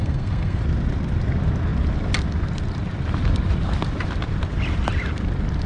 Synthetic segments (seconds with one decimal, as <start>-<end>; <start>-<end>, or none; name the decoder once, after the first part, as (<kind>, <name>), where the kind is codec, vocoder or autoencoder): 0.0-0.6 (codec, SNAC)